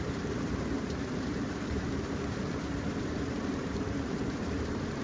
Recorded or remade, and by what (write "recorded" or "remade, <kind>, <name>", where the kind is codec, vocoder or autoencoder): remade, vocoder, BigVGAN v2